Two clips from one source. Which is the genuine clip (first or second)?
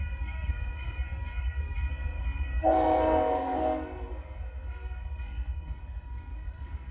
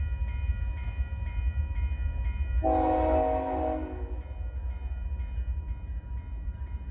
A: second